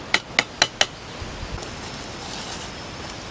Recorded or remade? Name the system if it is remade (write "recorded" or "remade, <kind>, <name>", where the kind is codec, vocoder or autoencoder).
recorded